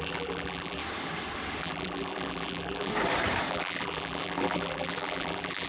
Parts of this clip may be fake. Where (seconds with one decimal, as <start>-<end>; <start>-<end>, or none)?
0.0-0.8; 1.6-2.9; 3.5-5.7